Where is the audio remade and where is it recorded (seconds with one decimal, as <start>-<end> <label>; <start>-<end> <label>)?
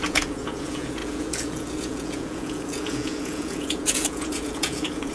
0.0-5.1 remade